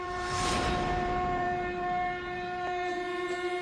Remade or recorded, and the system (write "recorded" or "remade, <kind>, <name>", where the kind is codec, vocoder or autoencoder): remade, vocoder, BigVGAN v2